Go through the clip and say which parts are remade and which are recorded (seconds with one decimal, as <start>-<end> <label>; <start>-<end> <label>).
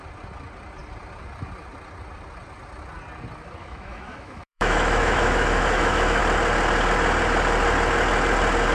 0.0-3.6 recorded; 3.6-6.2 remade; 6.2-8.7 recorded